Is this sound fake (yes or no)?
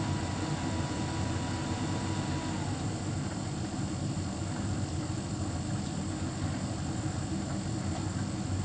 no